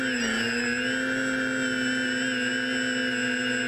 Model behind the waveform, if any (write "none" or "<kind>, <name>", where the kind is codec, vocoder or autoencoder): none